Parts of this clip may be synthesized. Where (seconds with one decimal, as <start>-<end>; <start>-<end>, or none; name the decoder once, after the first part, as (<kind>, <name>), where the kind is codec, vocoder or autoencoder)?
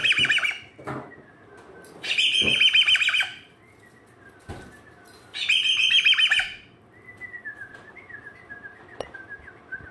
none